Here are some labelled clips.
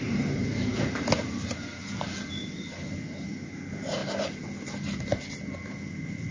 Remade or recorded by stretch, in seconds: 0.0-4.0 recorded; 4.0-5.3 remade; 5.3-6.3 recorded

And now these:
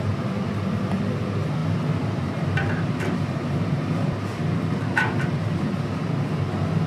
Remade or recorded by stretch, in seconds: 0.0-1.6 recorded; 1.6-5.7 remade; 5.7-6.9 recorded

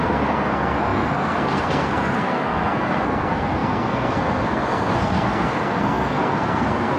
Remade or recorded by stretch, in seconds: 0.0-7.0 remade